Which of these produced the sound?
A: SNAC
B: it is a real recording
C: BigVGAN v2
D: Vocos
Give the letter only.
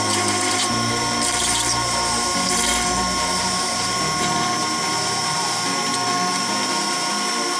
C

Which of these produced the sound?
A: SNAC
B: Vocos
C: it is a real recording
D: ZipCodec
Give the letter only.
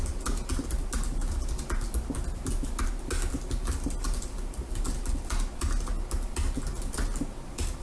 C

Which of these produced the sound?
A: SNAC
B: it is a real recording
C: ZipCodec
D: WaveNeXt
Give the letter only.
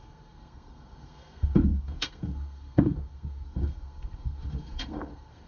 A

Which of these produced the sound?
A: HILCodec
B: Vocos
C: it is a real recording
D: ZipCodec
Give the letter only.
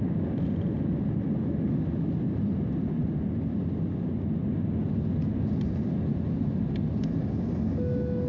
C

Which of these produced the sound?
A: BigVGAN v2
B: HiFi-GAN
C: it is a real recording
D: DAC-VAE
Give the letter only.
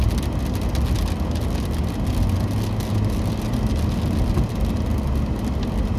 C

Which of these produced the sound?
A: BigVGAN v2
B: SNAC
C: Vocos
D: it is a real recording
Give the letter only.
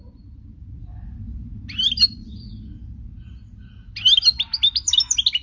D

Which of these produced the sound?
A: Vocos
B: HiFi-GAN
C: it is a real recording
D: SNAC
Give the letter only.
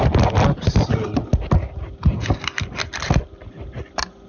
C